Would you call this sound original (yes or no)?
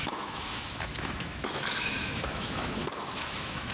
no